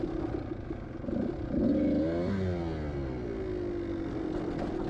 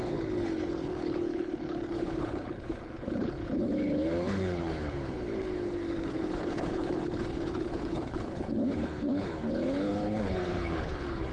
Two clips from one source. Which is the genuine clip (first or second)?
first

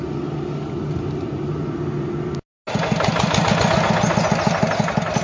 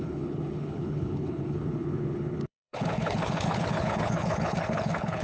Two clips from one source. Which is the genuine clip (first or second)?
first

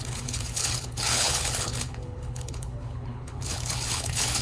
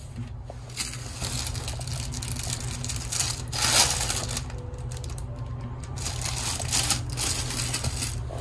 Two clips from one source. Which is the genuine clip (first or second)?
second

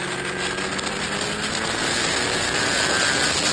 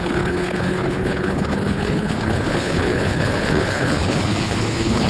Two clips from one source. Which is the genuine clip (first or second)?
first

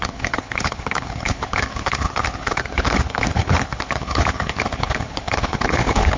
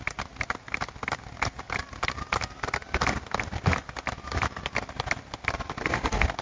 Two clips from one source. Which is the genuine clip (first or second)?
second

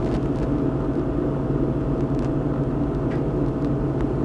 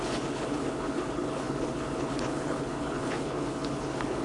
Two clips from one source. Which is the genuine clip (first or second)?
first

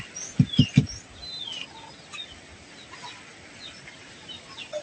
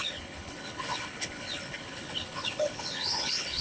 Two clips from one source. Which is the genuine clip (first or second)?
first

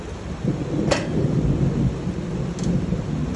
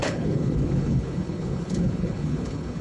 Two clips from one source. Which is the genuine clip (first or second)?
first